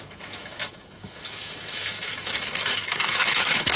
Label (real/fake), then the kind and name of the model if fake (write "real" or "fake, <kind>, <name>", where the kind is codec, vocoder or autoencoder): fake, autoencoder, DAC-VAE